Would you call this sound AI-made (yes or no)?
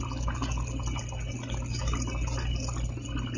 no